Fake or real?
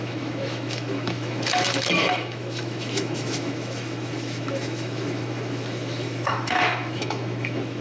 fake